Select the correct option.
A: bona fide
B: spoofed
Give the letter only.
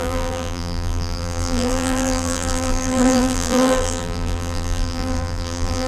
B